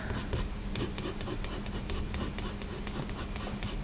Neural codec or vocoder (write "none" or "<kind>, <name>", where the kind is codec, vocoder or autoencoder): none